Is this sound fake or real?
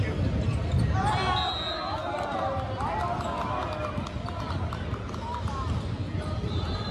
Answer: real